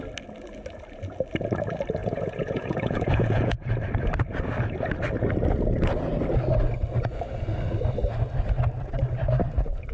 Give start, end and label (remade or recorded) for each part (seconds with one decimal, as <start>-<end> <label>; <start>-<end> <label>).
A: 0.0-2.0 recorded; 2.0-3.7 remade; 3.7-9.9 recorded